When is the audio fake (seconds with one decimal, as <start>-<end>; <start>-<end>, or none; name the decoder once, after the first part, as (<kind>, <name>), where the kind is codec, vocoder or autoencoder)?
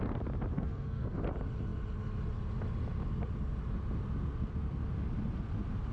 0.5-1.2 (codec, SNAC)